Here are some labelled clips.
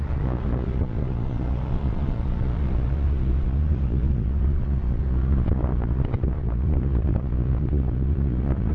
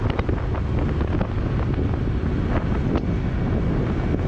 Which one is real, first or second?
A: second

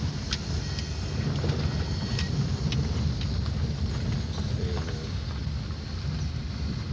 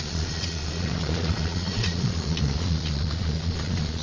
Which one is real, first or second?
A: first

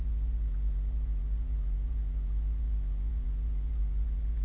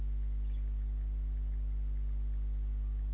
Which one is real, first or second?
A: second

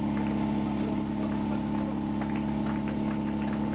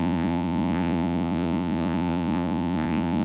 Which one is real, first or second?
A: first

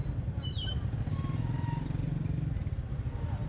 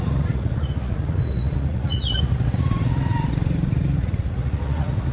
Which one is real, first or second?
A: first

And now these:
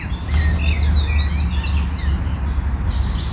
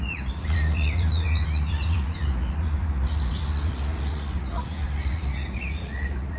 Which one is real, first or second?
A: first